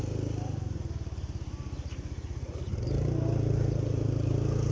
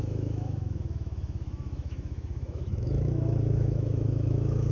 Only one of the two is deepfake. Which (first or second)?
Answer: second